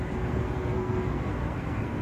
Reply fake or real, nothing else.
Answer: fake